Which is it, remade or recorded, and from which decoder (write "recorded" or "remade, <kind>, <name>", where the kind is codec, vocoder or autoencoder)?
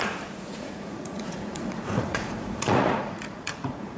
remade, vocoder, Vocos